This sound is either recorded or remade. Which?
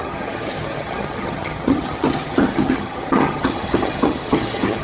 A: remade